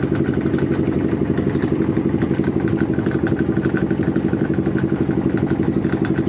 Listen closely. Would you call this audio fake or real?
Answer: real